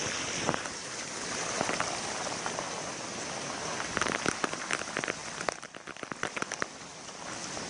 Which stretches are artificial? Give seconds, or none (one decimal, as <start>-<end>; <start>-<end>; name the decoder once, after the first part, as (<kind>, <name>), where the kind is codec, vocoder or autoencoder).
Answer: 0.0-5.2 (vocoder, BigVGAN v2); 6.0-7.7